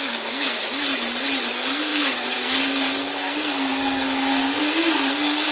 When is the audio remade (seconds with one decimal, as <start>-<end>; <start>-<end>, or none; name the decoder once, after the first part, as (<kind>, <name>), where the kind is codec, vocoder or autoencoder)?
0.0-0.6 (codec, SNAC); 1.5-5.5